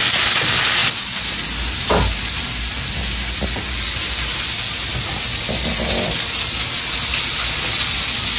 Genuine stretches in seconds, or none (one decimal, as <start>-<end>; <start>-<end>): 0.0-8.4

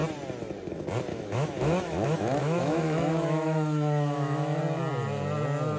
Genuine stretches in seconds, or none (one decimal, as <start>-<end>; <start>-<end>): 0.0-1.1; 4.6-5.8

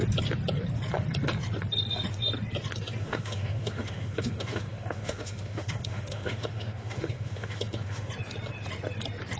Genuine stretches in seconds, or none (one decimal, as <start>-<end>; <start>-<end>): 0.0-3.0; 8.1-9.4

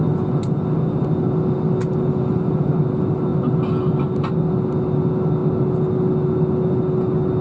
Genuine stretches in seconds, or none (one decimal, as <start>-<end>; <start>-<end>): 0.0-7.4

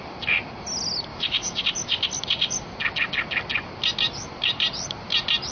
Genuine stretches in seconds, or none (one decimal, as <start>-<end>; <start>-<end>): 0.0-1.1; 1.6-5.5

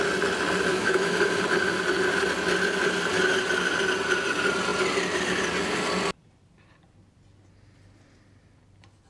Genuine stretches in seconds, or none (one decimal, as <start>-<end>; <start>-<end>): 0.0-0.7; 1.3-9.1

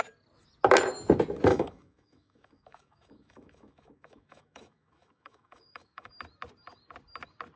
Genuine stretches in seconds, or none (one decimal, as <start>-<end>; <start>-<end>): 0.0-1.5; 6.1-7.6